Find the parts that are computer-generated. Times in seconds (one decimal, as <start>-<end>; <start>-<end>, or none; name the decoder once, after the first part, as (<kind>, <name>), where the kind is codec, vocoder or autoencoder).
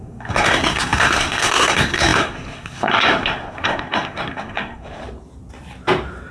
0.0-5.0 (codec, SNAC)